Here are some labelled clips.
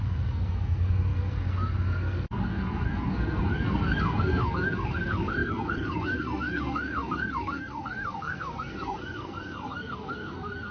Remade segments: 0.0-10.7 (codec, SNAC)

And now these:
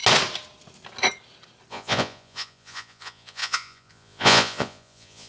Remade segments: 1.7-5.3 (vocoder, Vocos)

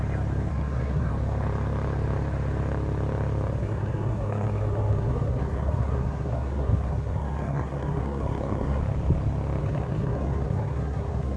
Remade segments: 0.5-1.1 (codec, SNAC); 3.6-8.8; 9.6-11.4

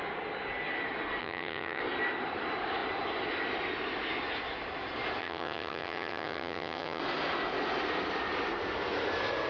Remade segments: 1.2-1.8 (vocoder, HiFi-GAN); 5.2-7.0

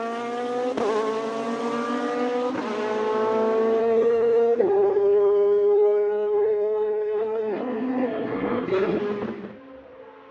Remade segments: 3.8-9.0 (codec, SNAC)

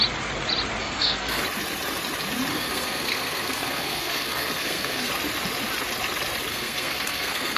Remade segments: 0.8-1.4 (codec, SNAC); 2.5-5.1; 6.5-7.6

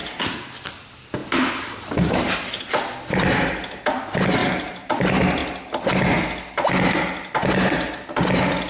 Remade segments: 0.0-0.7 (vocoder, BigVGAN v2); 1.2-2.6; 4.4-4.9